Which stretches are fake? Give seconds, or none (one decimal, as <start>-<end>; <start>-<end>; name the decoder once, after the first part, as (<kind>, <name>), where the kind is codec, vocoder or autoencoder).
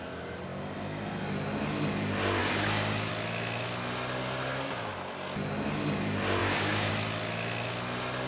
2.4-3.1 (codec, DAC); 6.4-6.9